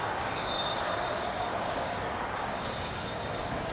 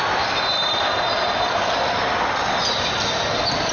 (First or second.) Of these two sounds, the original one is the second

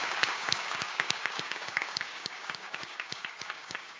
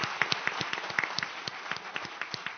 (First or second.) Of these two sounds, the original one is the second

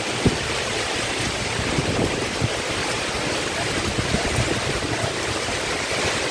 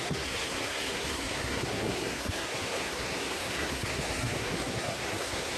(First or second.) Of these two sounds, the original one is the first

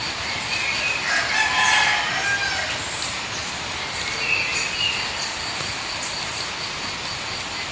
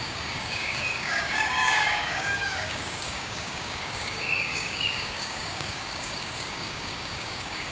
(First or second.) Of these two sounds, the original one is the first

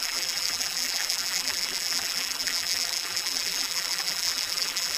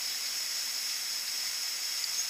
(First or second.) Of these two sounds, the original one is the second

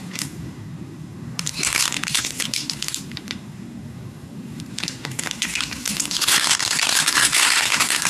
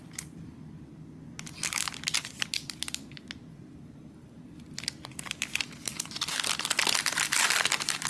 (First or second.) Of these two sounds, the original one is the second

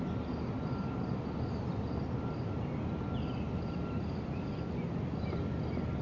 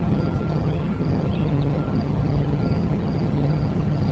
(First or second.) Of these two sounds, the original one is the first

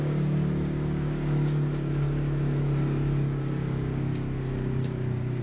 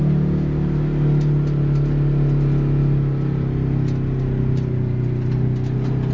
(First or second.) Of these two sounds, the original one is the second